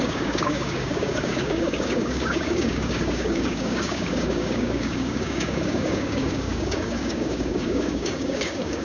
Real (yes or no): no